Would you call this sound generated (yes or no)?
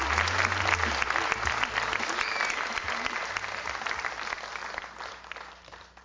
no